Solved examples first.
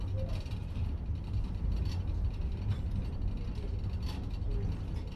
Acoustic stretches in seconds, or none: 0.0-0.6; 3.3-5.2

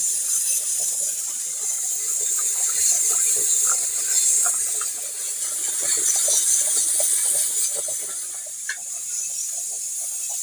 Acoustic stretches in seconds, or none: 3.9-10.4

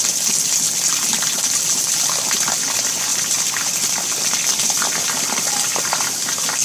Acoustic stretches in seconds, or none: 0.0-6.6

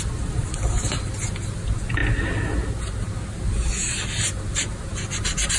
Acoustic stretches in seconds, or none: 0.0-5.6